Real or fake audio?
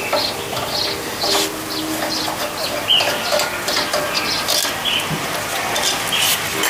real